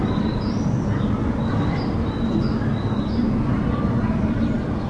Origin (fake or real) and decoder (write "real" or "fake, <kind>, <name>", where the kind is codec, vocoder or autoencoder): real